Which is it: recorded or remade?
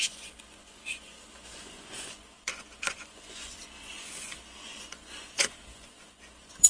remade